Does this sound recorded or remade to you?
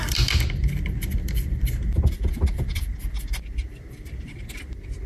remade